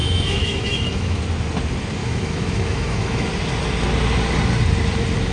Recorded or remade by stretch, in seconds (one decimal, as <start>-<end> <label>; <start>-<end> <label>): 0.0-1.2 remade; 1.2-2.0 recorded; 2.0-3.3 remade; 3.3-5.3 recorded